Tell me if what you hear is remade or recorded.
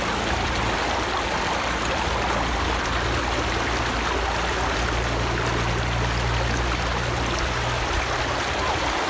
recorded